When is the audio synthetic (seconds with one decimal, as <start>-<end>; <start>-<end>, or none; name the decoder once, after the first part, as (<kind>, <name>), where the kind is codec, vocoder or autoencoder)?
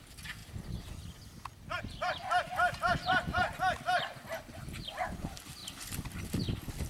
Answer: none